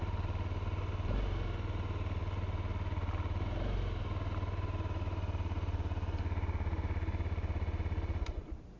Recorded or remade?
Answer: recorded